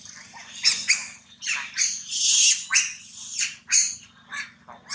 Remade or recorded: recorded